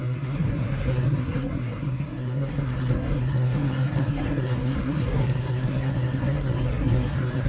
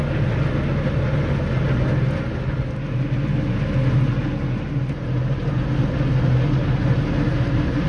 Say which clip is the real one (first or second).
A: second